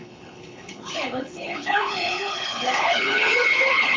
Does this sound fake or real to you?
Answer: fake